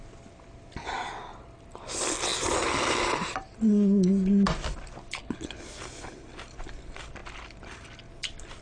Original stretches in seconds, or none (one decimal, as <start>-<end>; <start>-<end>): 0.0-5.2; 5.8-8.6